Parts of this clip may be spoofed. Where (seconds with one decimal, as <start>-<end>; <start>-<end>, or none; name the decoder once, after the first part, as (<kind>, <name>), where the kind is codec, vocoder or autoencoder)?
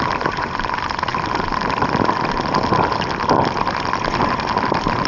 none